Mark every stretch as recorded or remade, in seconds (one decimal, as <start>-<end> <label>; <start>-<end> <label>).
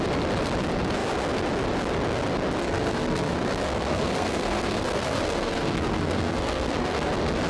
0.0-2.6 recorded; 2.6-7.1 remade; 7.1-7.5 recorded